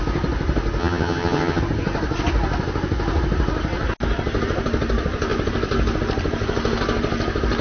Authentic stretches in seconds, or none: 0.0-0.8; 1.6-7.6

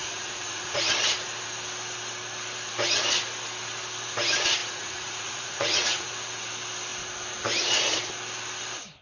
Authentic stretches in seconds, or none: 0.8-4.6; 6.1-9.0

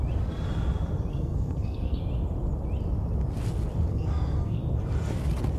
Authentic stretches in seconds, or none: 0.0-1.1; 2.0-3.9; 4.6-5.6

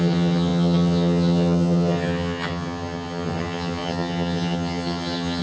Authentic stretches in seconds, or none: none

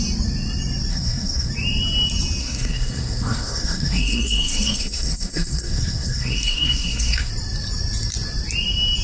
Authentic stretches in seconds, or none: 0.0-0.9; 1.5-2.4; 7.3-9.0

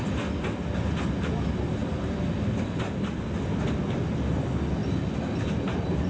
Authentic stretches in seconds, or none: 0.0-6.1